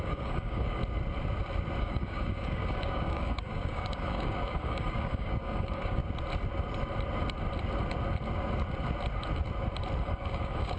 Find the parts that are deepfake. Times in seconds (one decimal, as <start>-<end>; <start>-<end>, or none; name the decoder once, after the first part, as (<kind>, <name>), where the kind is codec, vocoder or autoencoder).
0.0-0.8 (codec, DAC); 1.8-6.0; 10.0-10.8